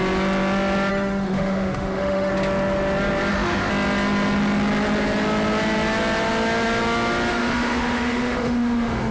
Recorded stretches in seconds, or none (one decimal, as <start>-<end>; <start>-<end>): 0.0-0.9; 2.3-3.3; 3.7-7.3